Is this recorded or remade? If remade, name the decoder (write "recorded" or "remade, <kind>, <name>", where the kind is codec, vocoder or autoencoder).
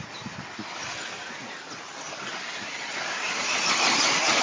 recorded